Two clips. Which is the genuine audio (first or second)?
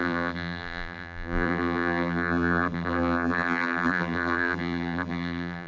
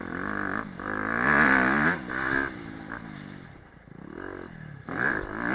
second